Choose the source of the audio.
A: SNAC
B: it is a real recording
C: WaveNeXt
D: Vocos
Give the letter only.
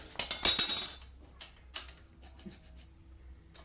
B